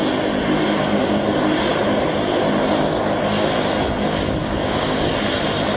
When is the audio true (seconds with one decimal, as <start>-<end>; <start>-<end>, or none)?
0.0-4.4; 5.1-5.8